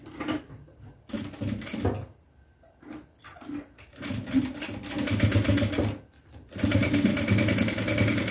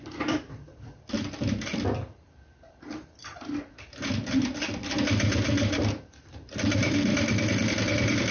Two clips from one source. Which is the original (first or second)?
first